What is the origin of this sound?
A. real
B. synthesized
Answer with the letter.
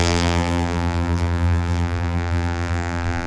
B